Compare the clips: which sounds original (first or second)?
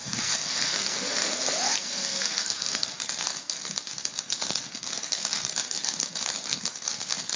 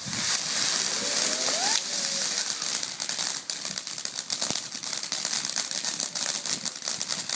second